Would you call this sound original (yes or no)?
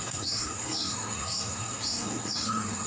no